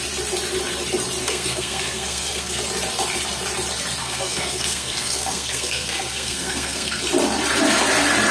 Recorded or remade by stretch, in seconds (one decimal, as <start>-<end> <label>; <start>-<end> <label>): 0.0-1.2 recorded; 1.2-2.6 remade; 2.6-4.0 recorded; 4.0-7.0 remade; 7.0-8.3 recorded